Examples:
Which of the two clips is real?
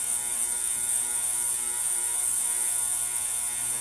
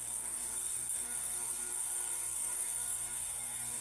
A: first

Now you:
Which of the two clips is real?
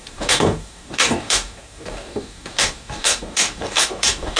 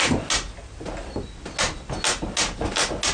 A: second